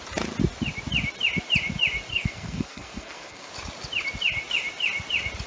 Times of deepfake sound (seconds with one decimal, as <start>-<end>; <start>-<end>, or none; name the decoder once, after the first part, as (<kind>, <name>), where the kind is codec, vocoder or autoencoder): 2.1-3.5 (codec, SNAC)

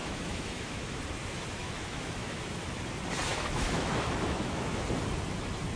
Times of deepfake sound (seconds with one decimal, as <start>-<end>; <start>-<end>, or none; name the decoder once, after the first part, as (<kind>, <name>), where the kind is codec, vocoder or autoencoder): 0.0-1.0 (autoencoder, DAC-VAE); 1.6-2.6; 3.3-4.8

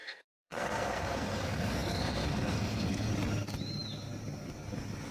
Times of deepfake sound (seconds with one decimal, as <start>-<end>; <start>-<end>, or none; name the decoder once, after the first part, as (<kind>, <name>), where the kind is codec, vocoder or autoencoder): 0.0-3.1 (codec, SNAC)